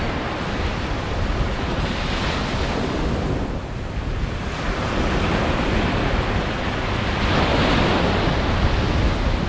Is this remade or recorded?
recorded